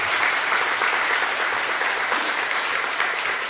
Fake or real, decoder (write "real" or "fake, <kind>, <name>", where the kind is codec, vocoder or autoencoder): fake, vocoder, BigVGAN v2